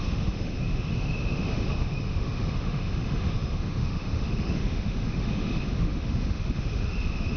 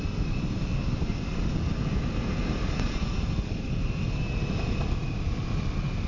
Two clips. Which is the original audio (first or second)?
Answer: second